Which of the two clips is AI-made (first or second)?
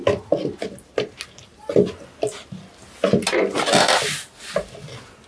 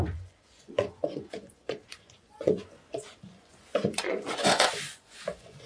second